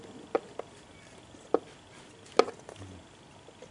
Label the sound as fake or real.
real